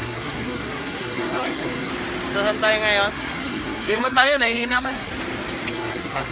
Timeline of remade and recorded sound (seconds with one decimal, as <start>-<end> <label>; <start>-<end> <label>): 0.0-1.9 remade; 1.9-3.1 recorded; 3.1-5.1 remade; 5.1-5.7 recorded; 5.7-6.3 remade